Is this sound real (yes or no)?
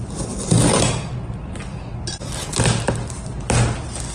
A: yes